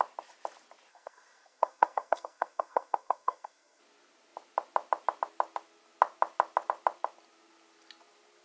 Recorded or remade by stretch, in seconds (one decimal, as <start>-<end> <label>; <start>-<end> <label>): 0.0-0.9 recorded; 0.9-3.8 remade; 3.8-8.4 recorded